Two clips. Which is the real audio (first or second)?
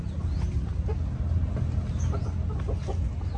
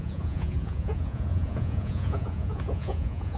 first